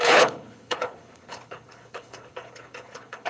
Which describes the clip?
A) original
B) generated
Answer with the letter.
B